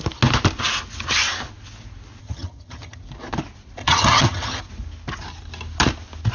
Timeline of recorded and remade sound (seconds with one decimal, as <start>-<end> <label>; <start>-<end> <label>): 0.0-2.2 recorded; 2.2-3.0 remade; 3.0-3.8 recorded; 3.8-4.6 remade; 4.6-6.3 recorded